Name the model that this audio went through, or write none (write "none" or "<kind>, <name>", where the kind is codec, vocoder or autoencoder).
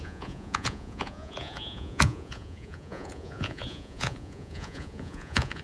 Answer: vocoder, Vocos